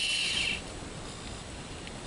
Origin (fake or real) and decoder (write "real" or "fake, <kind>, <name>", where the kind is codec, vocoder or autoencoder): real